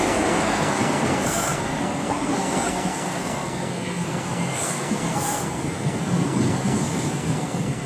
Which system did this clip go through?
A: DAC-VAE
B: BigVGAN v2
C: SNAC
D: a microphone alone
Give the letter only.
C